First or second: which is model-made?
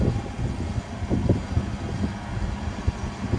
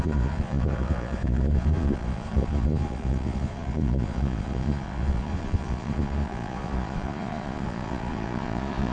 second